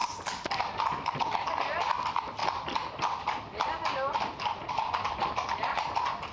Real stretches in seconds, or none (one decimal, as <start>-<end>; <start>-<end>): 0.0-6.3